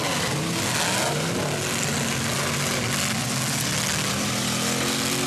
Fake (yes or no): no